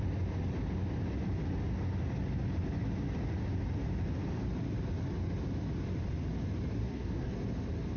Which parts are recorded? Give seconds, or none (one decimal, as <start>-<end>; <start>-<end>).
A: 0.0-6.8; 7.3-8.0